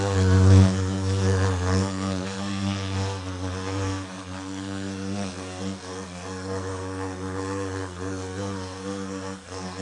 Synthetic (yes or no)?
yes